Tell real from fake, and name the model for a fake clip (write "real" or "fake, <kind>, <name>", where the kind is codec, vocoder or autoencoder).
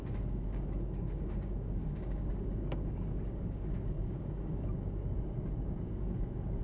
fake, codec, DAC